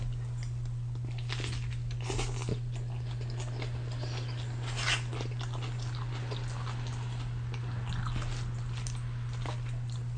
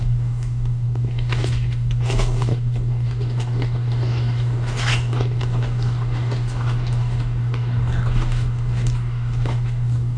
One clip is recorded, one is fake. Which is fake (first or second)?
second